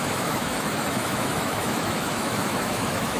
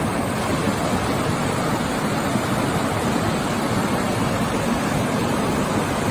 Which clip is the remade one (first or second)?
first